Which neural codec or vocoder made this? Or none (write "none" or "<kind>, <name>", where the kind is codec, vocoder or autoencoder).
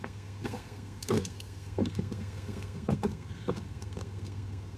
codec, SNAC